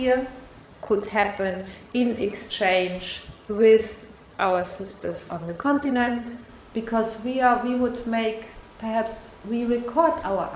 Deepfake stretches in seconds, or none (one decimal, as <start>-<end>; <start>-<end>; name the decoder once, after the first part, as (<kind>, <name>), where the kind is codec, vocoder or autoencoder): 0.6-2.5 (vocoder, HiFi-GAN); 3.1-6.5